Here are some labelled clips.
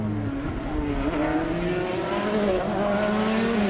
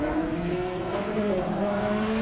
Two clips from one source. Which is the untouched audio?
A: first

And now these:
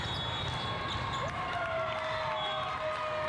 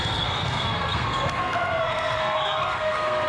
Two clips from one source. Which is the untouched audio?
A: first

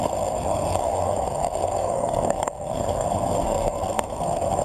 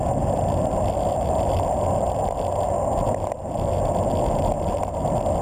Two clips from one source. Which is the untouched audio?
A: second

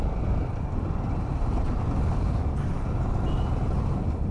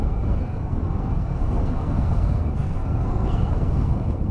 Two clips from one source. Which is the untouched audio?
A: first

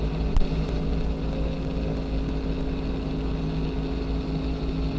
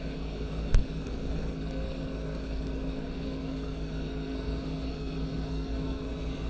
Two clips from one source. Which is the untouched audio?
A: first